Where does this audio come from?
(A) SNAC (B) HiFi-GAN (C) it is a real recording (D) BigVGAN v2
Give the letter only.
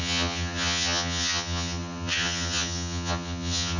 B